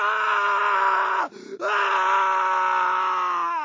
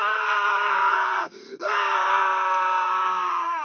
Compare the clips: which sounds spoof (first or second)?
second